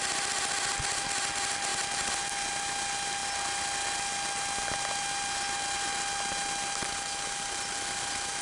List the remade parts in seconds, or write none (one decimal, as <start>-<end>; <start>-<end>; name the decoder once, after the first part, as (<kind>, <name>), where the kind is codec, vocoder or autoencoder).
none